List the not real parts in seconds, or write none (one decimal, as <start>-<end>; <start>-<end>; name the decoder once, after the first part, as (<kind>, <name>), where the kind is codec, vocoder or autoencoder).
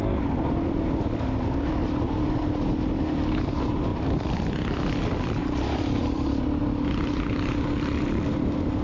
5.4-6.6 (vocoder, BigVGAN v2)